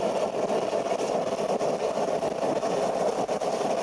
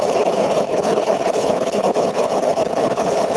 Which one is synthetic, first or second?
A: second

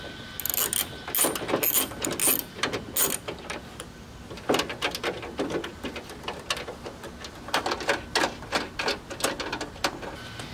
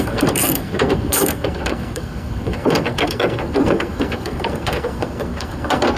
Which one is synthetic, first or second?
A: second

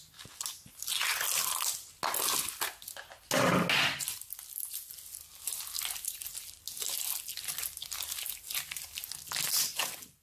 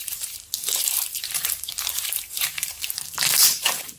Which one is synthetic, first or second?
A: second